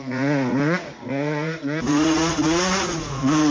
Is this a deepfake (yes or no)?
yes